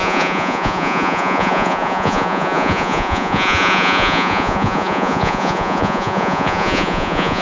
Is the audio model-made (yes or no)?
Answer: yes